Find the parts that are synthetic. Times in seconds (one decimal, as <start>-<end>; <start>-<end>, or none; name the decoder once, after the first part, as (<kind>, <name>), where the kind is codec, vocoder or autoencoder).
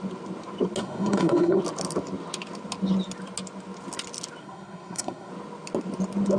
0.8-1.6 (codec, SNAC); 4.4-5.3